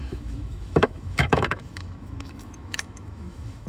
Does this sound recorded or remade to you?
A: remade